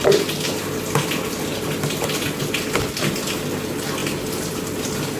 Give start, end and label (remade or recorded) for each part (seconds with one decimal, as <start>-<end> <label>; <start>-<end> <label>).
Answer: 0.0-4.0 recorded; 4.0-5.2 remade